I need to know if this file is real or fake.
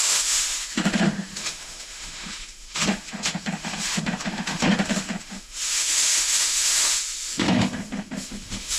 fake